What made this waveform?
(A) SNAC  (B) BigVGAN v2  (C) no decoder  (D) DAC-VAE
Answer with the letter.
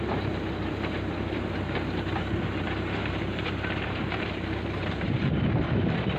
B